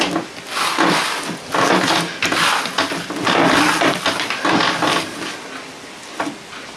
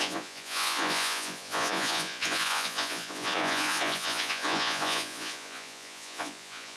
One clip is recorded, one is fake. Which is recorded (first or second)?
first